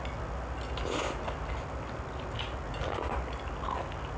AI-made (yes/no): no